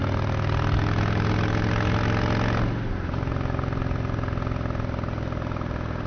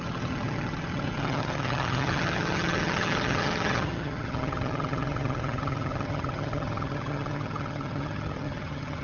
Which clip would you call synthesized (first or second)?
second